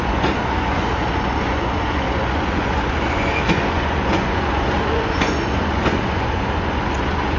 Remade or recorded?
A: remade